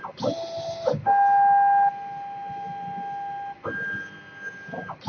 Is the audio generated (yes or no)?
no